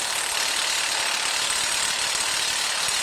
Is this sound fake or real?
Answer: real